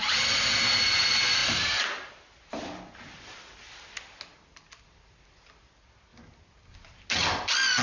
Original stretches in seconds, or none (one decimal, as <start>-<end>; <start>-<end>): 0.0-1.4; 2.1-7.8